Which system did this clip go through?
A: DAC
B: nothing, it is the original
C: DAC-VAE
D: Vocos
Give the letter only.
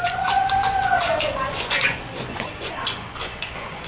D